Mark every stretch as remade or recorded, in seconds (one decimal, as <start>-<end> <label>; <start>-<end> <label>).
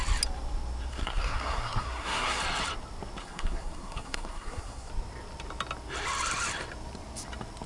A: 0.0-0.9 recorded; 0.9-2.4 remade; 2.4-3.2 recorded; 3.2-4.9 remade; 4.9-7.7 recorded